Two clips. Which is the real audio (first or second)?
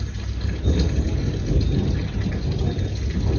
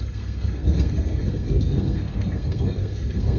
first